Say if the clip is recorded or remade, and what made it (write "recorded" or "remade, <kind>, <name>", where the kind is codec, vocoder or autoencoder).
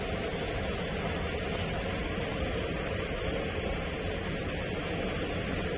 recorded